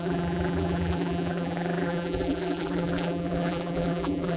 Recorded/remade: remade